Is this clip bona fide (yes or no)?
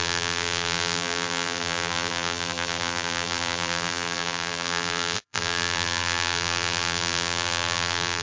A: no